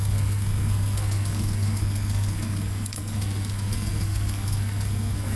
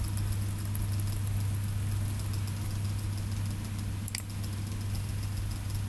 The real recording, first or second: second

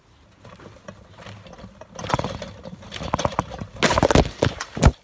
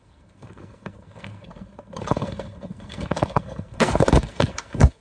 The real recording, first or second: first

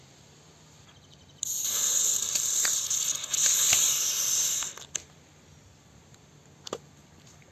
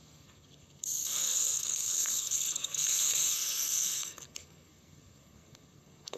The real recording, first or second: first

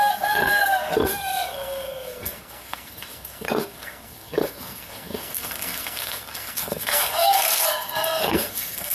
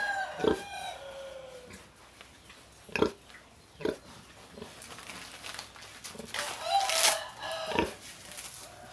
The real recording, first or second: second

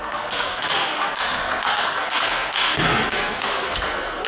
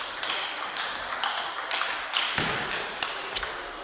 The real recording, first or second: second